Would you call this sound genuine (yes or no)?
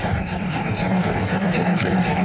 no